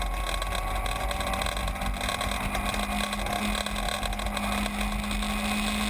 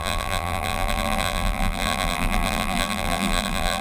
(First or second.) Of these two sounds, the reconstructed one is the second